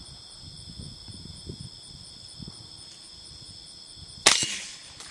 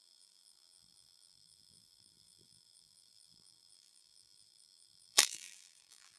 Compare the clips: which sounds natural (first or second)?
first